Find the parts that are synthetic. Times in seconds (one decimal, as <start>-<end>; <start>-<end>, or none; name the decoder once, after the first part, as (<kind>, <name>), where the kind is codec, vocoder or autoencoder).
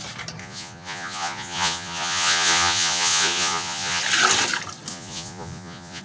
0.4-4.0 (vocoder, Vocos); 4.9-6.0